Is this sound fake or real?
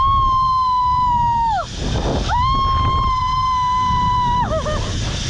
real